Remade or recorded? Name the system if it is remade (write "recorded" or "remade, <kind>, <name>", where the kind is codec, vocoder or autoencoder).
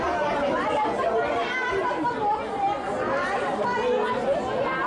recorded